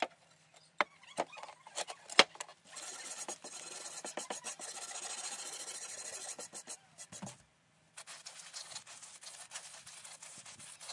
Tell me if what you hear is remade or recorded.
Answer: recorded